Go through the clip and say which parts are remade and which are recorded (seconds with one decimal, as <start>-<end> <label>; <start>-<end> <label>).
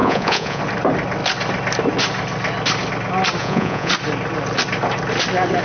0.0-0.6 remade; 0.6-3.4 recorded; 3.4-3.9 remade; 3.9-5.6 recorded